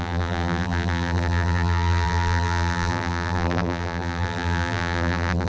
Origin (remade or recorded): remade